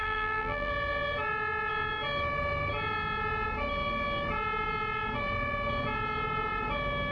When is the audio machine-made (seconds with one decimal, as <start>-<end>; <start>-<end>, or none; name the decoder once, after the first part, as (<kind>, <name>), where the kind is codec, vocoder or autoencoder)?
0.0-0.7 (vocoder, BigVGAN v2)